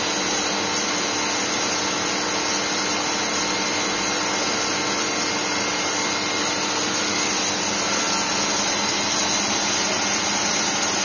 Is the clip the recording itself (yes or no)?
yes